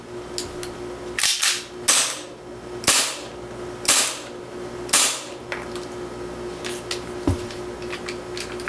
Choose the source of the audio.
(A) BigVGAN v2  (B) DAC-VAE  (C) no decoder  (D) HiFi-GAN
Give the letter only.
C